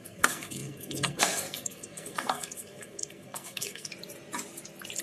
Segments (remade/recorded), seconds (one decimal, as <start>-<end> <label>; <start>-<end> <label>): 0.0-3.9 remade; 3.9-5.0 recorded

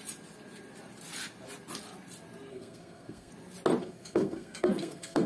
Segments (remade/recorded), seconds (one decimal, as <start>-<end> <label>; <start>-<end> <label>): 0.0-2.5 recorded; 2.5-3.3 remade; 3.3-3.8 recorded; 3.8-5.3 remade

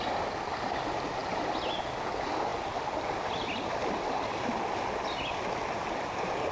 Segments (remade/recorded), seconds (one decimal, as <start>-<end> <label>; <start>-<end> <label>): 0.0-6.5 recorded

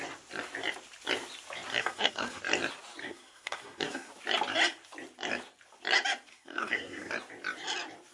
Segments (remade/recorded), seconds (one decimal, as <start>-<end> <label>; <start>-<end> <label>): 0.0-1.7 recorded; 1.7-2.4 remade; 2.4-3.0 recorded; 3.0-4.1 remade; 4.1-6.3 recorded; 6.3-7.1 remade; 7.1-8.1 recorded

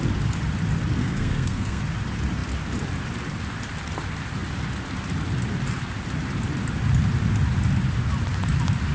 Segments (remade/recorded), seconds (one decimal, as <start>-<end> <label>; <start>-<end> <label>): 0.0-1.0 recorded; 1.0-1.8 remade; 1.8-8.9 recorded